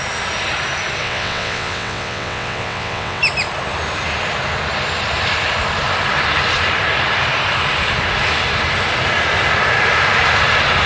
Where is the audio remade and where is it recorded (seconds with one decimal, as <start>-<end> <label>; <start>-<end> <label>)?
0.0-1.0 recorded; 1.0-3.2 remade; 3.2-10.9 recorded

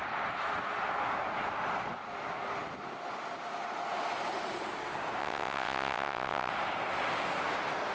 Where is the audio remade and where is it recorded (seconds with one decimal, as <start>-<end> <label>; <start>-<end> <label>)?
0.0-5.2 recorded; 5.2-6.5 remade; 6.5-7.9 recorded

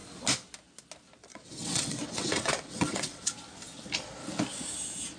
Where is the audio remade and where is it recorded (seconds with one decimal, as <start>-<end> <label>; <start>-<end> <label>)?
0.0-1.3 recorded; 1.3-3.3 remade; 3.3-5.2 recorded